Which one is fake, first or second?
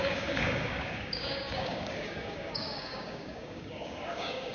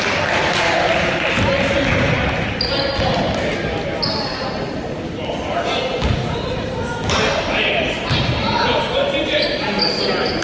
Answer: first